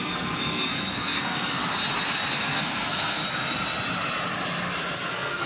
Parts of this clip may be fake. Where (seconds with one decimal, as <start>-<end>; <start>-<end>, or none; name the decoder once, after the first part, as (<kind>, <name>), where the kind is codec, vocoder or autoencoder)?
0.0-1.6 (codec, SNAC); 2.3-3.2; 5.1-5.5